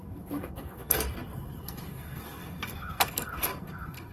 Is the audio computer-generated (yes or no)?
yes